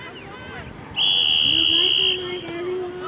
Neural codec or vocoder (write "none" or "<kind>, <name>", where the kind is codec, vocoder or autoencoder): none